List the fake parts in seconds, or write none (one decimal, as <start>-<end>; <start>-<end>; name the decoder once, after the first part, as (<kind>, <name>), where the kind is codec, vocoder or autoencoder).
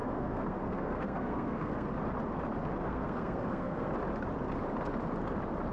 0.0-1.9 (codec, SNAC); 2.8-3.9